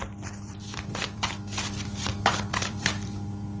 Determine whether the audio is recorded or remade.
remade